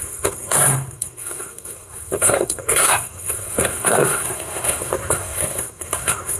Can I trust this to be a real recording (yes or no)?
no